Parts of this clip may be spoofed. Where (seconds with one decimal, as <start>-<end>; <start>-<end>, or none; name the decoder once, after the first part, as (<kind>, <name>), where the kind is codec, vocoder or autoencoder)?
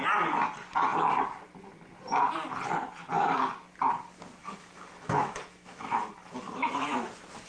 4.4-7.1 (autoencoder, DAC-VAE)